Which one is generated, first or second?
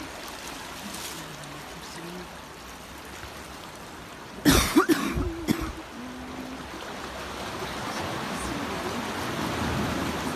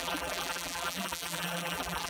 second